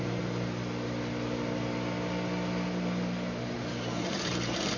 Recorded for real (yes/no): yes